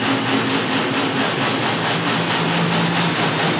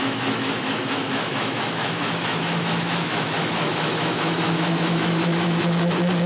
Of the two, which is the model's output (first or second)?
second